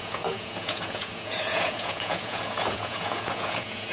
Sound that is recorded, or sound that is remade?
remade